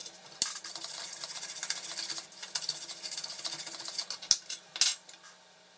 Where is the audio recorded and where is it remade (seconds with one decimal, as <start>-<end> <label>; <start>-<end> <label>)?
0.0-5.8 recorded

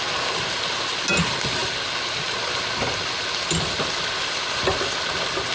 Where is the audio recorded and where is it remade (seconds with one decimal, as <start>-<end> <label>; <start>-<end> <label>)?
0.0-5.5 recorded

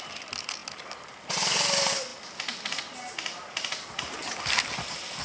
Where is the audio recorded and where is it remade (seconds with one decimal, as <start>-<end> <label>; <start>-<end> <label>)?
0.0-5.2 recorded